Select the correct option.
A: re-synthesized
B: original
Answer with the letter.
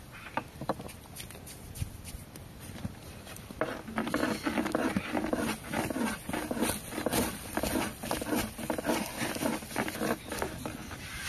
B